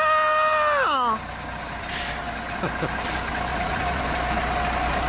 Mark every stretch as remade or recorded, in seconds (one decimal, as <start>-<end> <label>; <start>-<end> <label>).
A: 0.0-3.5 recorded; 3.5-4.0 remade; 4.0-5.1 recorded